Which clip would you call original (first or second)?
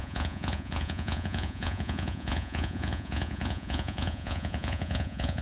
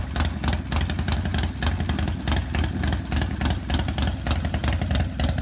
second